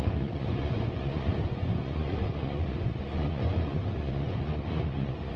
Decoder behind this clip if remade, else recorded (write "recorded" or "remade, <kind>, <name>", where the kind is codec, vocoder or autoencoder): remade, vocoder, Vocos